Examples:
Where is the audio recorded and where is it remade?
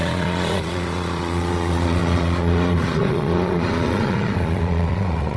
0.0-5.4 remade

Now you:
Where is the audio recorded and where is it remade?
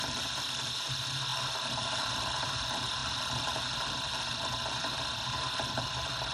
0.0-6.3 recorded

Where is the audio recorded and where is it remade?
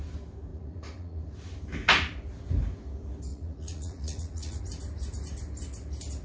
0.0-0.5 recorded; 0.5-1.2 remade; 1.2-3.3 recorded; 3.3-4.6 remade; 4.6-6.2 recorded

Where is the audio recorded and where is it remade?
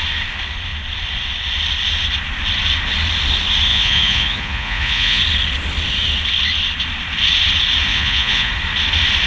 0.0-3.7 recorded; 3.7-5.2 remade; 5.2-7.9 recorded; 7.9-8.5 remade; 8.5-9.3 recorded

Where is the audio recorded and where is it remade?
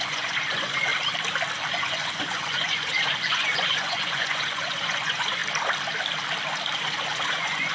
0.0-0.9 remade; 0.9-1.7 recorded; 1.7-5.4 remade; 5.4-6.8 recorded; 6.8-7.7 remade